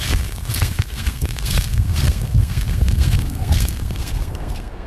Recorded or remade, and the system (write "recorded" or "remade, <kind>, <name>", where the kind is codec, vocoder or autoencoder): remade, codec, SNAC